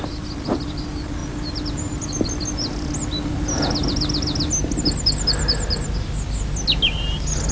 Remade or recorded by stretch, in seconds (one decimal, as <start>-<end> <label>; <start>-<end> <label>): 0.0-7.5 recorded